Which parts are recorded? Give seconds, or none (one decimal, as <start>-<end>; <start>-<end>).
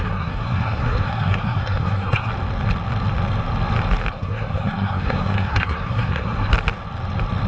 2.3-4.1; 6.5-7.5